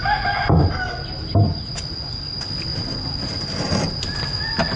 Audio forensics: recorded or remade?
recorded